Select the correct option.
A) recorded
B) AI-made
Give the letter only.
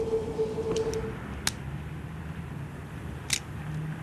A